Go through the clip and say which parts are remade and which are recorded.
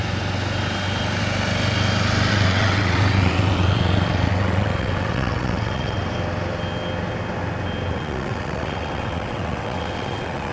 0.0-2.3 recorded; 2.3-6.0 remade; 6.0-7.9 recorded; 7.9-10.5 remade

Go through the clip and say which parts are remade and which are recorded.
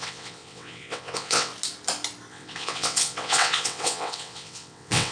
0.0-1.5 remade; 1.5-2.3 recorded; 2.3-5.1 remade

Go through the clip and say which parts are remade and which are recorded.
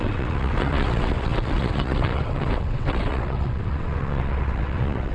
0.0-5.1 remade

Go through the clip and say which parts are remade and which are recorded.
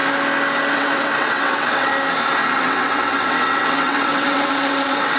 0.0-0.7 recorded; 0.7-1.9 remade; 1.9-2.6 recorded; 2.6-5.2 remade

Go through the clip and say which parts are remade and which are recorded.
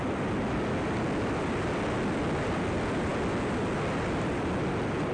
0.0-5.1 recorded